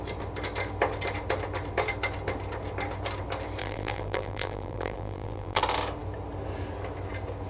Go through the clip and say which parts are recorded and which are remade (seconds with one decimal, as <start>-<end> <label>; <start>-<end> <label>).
0.0-3.6 recorded; 3.6-5.6 remade; 5.6-7.5 recorded